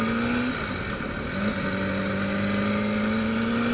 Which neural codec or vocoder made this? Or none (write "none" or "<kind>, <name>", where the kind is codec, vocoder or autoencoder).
none